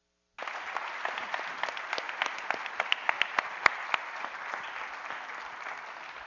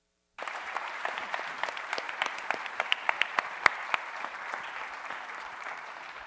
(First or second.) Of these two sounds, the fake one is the second